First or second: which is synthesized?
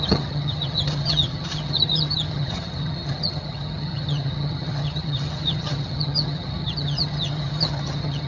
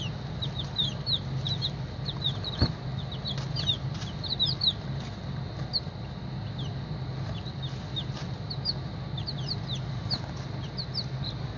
first